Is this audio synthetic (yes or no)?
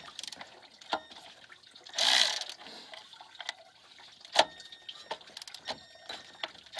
no